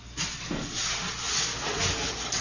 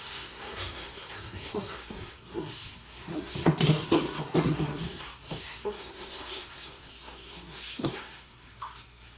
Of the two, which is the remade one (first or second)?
second